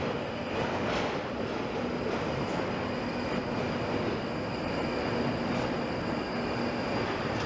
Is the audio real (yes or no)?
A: yes